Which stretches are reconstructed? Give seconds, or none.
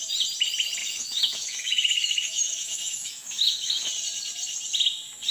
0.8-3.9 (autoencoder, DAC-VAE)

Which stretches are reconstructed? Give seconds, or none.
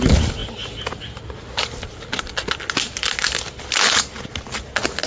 none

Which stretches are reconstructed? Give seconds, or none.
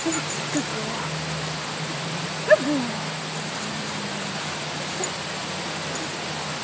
none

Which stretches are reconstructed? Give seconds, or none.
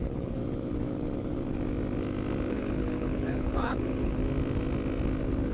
0.0-0.4 (codec, HILCodec); 2.5-4.2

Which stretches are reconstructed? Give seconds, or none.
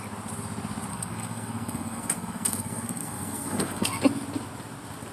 0.9-4.0 (codec, SNAC)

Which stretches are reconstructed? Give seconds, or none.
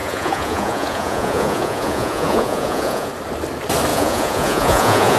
0.0-3.1 (vocoder, Vocos); 3.9-5.2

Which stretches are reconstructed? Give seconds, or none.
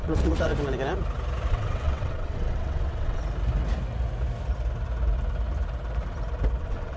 0.0-0.5 (vocoder, WaveNeXt); 1.5-3.2; 6.6-7.0